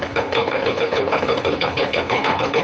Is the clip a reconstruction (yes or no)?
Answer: yes